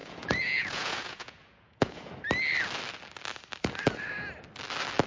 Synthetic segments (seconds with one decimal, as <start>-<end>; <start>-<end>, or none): 0.0-2.1